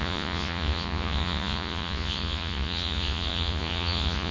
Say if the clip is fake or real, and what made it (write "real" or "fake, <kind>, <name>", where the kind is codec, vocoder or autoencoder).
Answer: fake, vocoder, Vocos